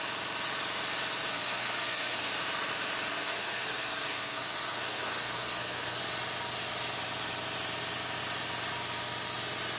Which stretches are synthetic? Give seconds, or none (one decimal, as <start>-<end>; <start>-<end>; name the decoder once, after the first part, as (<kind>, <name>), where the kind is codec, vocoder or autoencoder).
1.3-2.3 (codec, SNAC); 3.1-6.0